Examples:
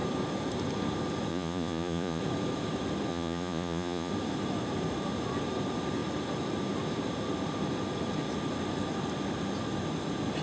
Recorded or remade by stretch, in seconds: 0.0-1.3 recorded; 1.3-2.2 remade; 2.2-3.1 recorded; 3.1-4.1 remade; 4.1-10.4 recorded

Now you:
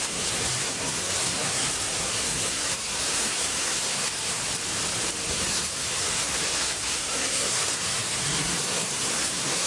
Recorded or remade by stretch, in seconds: 0.0-4.4 remade; 4.4-5.3 recorded; 5.3-9.7 remade

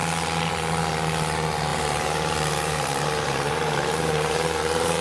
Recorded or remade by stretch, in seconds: 0.0-1.7 recorded; 1.7-5.0 remade

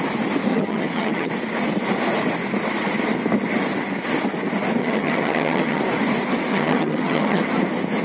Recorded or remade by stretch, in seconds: 0.0-0.5 recorded; 0.5-1.3 remade; 1.3-4.8 recorded; 4.8-5.8 remade; 5.8-6.5 recorded; 6.5-7.4 remade; 7.4-8.0 recorded

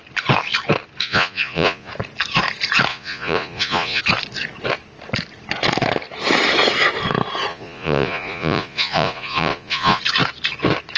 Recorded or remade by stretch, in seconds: 0.0-1.0 recorded; 1.0-1.9 remade; 1.9-2.9 recorded; 2.9-4.0 remade; 4.0-7.5 recorded; 7.5-10.0 remade; 10.0-11.0 recorded

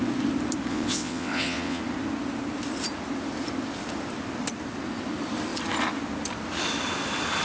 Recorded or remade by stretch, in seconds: 0.0-0.7 recorded; 0.7-1.8 remade; 1.8-7.4 recorded